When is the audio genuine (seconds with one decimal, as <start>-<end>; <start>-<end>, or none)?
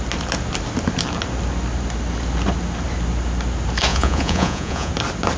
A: 0.0-3.9; 4.9-5.4